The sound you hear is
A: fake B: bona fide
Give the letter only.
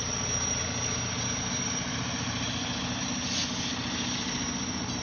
B